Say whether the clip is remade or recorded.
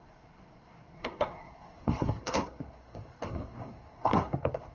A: remade